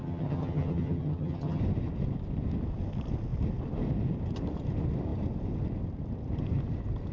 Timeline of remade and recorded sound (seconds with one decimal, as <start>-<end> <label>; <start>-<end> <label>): 0.0-1.6 remade; 1.6-7.1 recorded